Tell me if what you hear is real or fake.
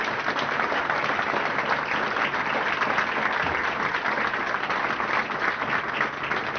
real